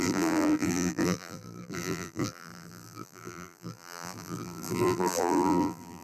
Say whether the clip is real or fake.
fake